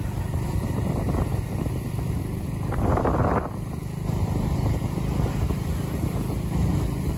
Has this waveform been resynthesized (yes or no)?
yes